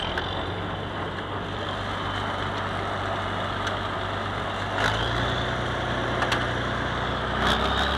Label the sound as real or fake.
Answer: real